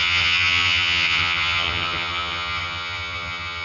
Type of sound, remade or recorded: remade